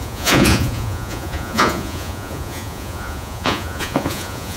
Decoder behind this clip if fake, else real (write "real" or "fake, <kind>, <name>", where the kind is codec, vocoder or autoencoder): fake, vocoder, Vocos